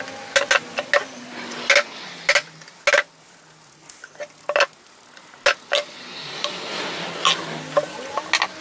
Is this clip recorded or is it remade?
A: recorded